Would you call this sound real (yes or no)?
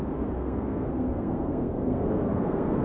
no